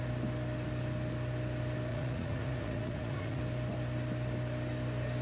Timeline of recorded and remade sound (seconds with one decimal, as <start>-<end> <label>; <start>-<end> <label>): 0.0-1.9 recorded; 1.9-3.4 remade; 3.4-5.2 recorded